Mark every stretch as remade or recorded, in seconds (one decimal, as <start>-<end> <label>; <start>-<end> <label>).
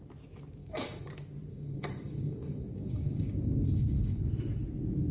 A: 0.0-0.6 recorded; 0.6-1.1 remade; 1.1-1.5 recorded; 1.5-4.2 remade; 4.2-5.1 recorded